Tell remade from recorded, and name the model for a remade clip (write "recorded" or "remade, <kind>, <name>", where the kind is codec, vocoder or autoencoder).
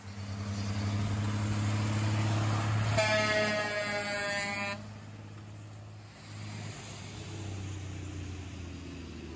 recorded